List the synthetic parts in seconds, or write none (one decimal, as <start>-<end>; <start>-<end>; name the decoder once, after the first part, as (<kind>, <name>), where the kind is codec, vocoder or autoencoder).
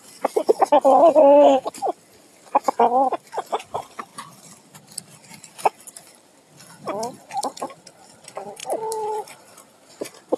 1.2-1.7 (codec, SNAC)